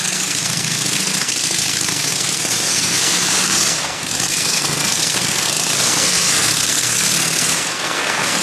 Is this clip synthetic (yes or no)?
yes